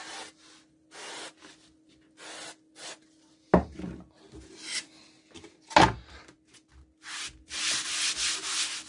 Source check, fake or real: real